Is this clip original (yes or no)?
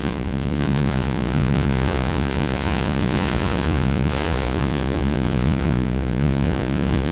no